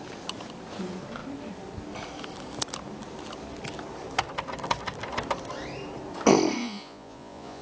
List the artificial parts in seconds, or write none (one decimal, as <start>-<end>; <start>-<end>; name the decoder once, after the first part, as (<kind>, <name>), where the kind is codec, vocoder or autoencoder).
6.6-7.6 (vocoder, Vocos)